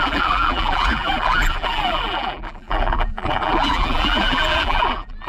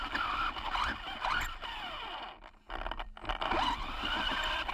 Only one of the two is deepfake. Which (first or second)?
first